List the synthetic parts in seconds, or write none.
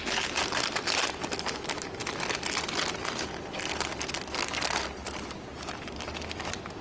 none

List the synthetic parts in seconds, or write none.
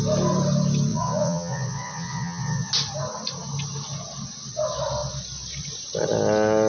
0.9-2.7 (vocoder, Vocos)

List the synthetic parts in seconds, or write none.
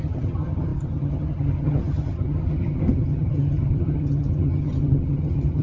0.0-5.6 (vocoder, HiFi-GAN)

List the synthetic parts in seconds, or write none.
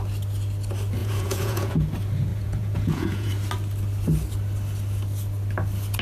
1.0-1.7 (vocoder, Vocos); 2.3-3.3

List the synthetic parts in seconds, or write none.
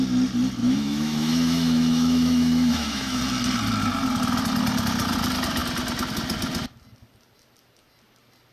0.6-3.2 (autoencoder, DAC-VAE)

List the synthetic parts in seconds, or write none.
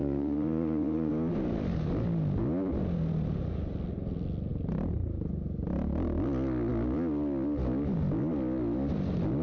0.0-1.1 (vocoder, Vocos)